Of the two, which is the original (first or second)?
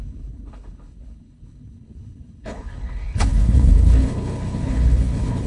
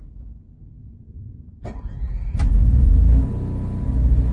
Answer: second